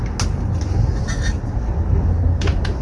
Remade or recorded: recorded